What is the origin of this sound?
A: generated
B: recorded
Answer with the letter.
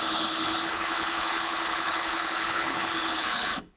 A